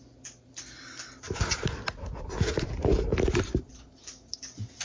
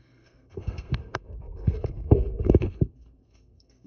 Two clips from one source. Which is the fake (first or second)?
second